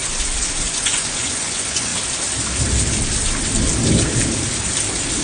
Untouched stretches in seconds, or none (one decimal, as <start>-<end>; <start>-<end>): 0.0-0.6; 1.9-5.2